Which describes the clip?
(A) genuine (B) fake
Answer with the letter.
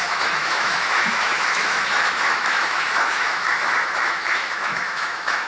B